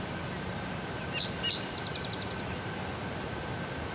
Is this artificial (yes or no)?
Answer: no